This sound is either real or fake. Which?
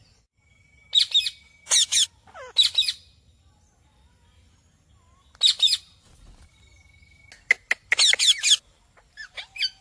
real